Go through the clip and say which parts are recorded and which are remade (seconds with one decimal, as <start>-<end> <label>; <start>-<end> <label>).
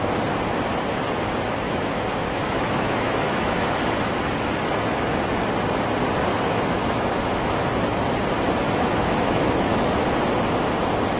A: 0.0-1.7 recorded; 1.7-3.8 remade; 3.8-6.3 recorded; 6.3-7.7 remade; 7.7-8.6 recorded; 8.6-9.9 remade; 9.9-11.2 recorded